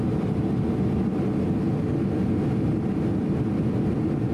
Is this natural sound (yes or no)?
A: yes